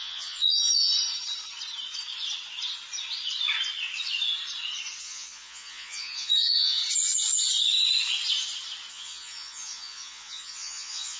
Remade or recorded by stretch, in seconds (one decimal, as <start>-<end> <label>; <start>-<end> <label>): 0.0-0.9 remade; 0.9-5.0 recorded; 5.0-6.8 remade; 6.8-8.9 recorded; 8.9-11.2 remade